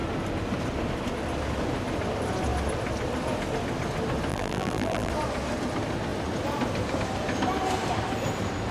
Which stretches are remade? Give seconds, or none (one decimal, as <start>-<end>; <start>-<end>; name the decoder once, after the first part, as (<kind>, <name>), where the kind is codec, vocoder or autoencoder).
4.3-5.1 (vocoder, BigVGAN v2)